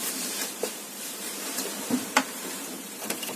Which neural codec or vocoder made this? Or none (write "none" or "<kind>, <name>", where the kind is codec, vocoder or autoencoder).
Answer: vocoder, BigVGAN v2